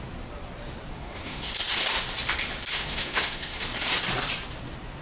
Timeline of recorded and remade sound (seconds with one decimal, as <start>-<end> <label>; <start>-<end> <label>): 0.0-0.9 recorded; 0.9-1.5 remade; 1.5-2.7 recorded; 2.7-3.6 remade; 3.6-5.0 recorded